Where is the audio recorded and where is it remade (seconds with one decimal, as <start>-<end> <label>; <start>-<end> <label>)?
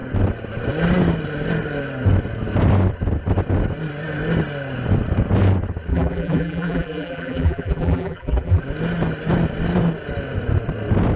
0.0-5.9 recorded; 5.9-8.6 remade; 8.6-11.2 recorded